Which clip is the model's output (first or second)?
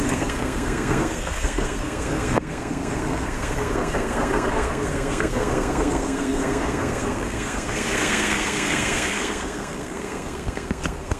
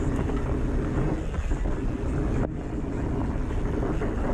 first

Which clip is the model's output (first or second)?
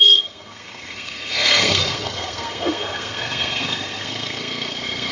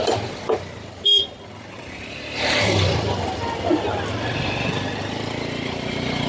first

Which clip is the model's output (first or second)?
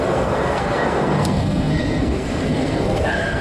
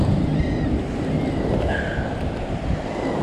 first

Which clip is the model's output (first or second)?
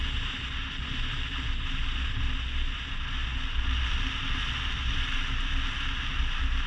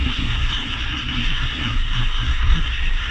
second